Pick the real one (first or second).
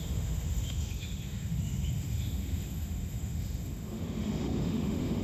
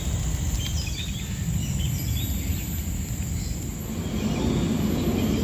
second